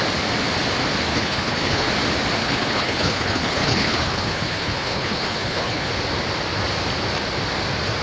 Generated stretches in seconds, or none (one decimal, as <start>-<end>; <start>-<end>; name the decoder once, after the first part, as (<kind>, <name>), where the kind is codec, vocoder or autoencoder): 1.1-1.9 (codec, HILCodec); 2.4-5.9